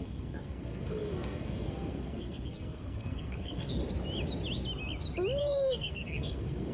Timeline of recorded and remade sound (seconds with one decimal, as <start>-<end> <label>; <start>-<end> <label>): 0.0-3.8 remade; 3.8-5.4 recorded; 5.4-6.7 remade